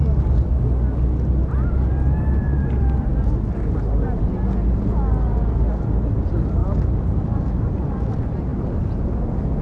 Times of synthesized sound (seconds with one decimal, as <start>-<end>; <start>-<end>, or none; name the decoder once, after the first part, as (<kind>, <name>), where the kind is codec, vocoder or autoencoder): none